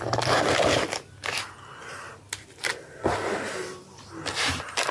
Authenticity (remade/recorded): recorded